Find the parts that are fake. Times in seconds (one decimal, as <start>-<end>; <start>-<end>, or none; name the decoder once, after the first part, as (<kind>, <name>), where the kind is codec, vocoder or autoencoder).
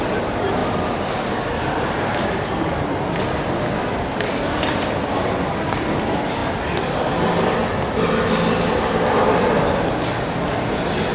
none